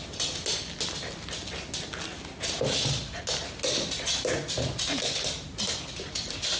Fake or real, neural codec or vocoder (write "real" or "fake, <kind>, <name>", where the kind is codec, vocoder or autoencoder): real